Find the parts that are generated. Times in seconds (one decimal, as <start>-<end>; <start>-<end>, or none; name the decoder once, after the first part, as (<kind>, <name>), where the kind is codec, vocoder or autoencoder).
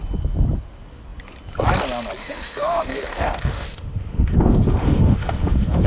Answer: 2.2-5.9 (autoencoder, DAC-VAE)